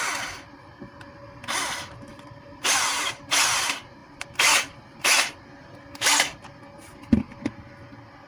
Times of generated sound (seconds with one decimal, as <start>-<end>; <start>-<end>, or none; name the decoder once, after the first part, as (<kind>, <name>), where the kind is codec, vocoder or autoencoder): 2.1-3.3 (vocoder, BigVGAN v2); 4.0-6.6